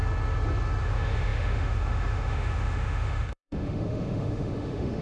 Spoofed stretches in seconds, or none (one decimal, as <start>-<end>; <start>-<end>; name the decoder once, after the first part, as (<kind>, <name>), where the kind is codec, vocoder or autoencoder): 0.8-5.0 (autoencoder, DAC-VAE)